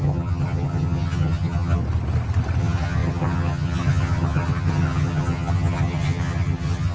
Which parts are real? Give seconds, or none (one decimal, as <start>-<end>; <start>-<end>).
1.8-2.6